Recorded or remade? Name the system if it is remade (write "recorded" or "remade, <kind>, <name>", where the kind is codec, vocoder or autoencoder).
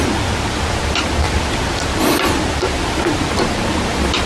recorded